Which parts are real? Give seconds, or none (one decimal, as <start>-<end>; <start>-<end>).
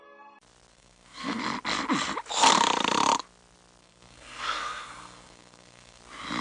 0.0-0.7; 1.4-3.8; 6.0-6.4